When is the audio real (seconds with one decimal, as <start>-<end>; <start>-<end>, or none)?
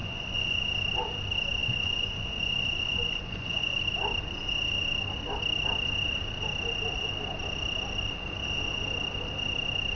0.6-1.6; 3.8-9.9